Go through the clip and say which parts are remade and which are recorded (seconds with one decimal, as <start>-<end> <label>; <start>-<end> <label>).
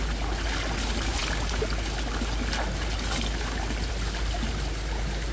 0.0-5.3 recorded